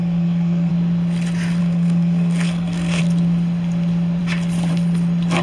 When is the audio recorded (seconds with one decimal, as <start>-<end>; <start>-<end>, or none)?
0.7-1.6; 3.0-5.4

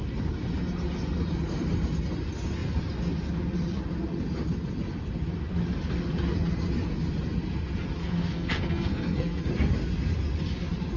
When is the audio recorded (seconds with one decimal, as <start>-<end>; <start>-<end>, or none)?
0.0-8.0; 9.5-11.0